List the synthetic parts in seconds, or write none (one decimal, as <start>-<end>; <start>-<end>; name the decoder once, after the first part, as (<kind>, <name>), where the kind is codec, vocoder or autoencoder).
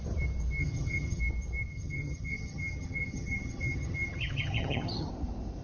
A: 0.6-1.2 (vocoder, HiFi-GAN); 1.7-5.1